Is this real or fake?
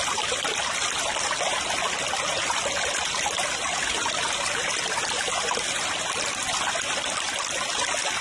fake